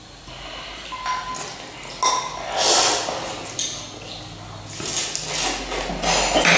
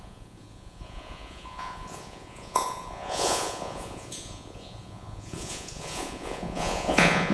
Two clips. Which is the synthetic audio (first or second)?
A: second